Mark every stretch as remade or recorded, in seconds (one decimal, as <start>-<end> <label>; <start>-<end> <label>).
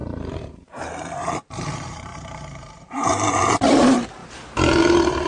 0.0-4.2 remade; 4.2-4.8 recorded; 4.8-5.3 remade